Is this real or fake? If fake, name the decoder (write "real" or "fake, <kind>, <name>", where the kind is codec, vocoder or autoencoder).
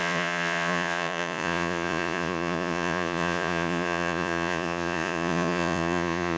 fake, vocoder, Vocos